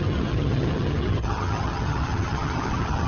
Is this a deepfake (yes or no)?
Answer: yes